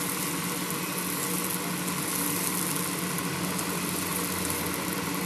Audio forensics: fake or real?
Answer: real